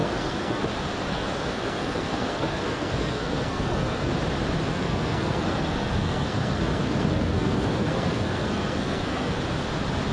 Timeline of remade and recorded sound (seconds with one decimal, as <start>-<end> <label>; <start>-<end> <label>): 0.0-0.6 remade; 0.6-1.1 recorded; 1.1-4.1 remade; 4.1-4.7 recorded; 4.7-9.4 remade; 9.4-10.1 recorded